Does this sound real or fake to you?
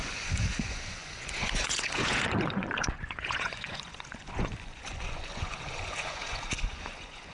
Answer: fake